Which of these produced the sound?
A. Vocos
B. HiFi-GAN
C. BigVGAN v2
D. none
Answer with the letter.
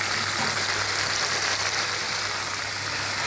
C